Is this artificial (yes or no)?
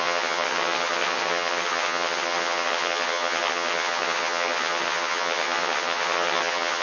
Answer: yes